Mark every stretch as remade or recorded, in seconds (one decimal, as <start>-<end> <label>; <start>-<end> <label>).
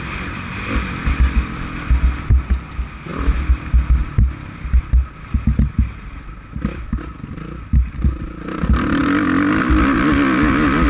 0.0-9.0 recorded; 9.0-9.7 remade; 9.7-10.9 recorded